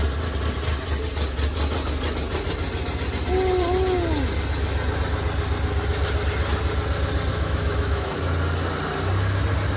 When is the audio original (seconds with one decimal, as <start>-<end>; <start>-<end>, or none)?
0.0-7.3; 8.2-9.8